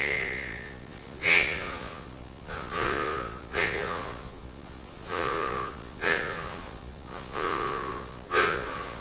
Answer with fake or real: fake